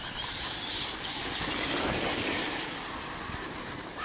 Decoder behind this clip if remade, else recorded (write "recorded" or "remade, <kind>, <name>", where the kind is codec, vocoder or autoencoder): remade, vocoder, BigVGAN v2